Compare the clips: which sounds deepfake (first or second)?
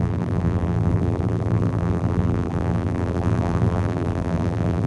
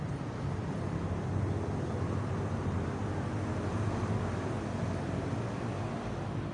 first